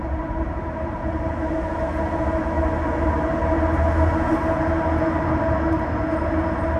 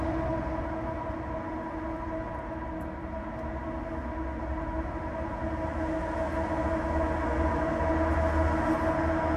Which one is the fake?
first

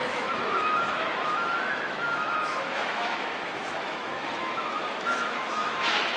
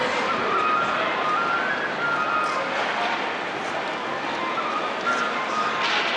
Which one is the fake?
first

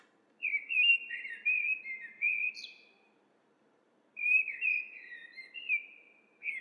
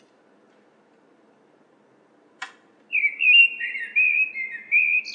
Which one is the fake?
first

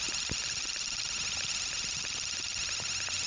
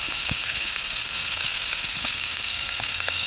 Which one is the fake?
second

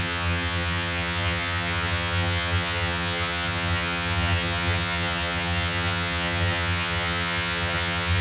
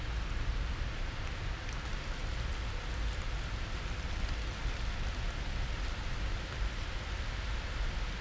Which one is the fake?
first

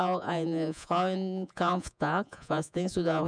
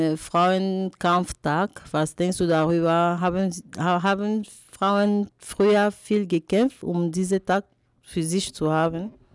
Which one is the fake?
first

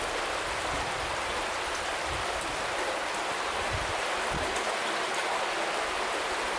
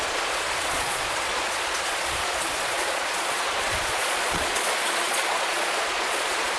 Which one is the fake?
second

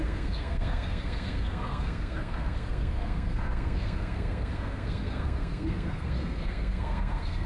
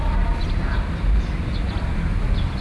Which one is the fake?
first